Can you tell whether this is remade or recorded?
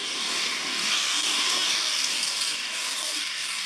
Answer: remade